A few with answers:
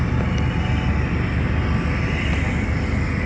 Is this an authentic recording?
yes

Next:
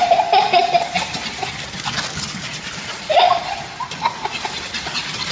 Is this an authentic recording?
yes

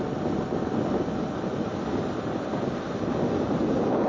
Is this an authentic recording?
yes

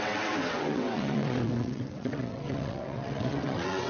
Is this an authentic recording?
no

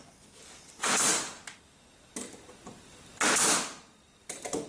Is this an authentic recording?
yes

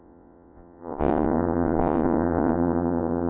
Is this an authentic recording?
no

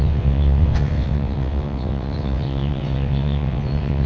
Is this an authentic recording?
no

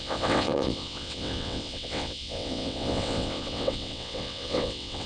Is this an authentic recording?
no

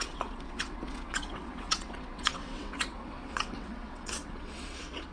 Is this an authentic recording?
no